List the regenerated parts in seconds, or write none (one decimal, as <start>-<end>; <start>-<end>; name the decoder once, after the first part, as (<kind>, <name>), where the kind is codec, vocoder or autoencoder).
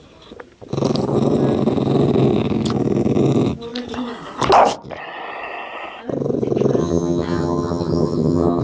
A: 6.8-8.6 (vocoder, HiFi-GAN)